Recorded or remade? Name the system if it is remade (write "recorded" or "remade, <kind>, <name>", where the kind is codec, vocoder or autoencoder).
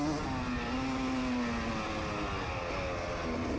recorded